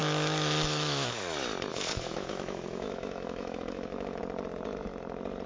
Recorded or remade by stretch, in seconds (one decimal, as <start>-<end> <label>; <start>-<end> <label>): 0.0-1.2 remade; 1.2-1.7 recorded; 1.7-4.2 remade; 4.2-5.5 recorded